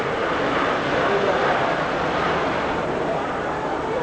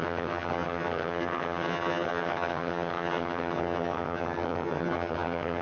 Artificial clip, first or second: second